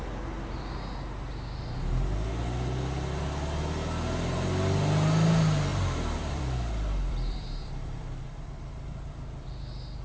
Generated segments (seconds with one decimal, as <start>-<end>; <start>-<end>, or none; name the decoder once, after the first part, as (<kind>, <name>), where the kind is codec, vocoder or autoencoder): 5.7-9.1 (vocoder, BigVGAN v2)